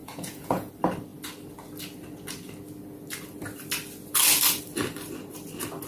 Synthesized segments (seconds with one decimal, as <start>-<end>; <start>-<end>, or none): 0.0-0.7